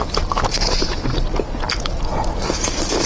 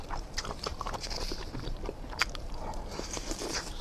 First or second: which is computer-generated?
second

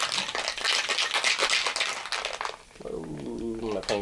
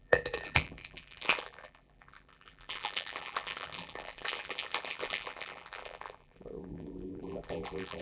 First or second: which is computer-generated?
second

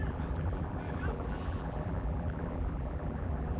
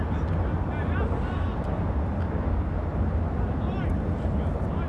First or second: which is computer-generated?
first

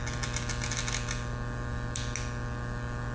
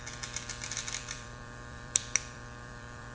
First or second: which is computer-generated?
second